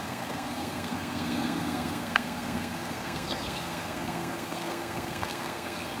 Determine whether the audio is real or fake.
fake